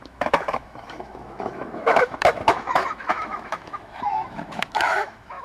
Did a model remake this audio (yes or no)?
yes